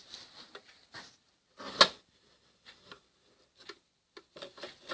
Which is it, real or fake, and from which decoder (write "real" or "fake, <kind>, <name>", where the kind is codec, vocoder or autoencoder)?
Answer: real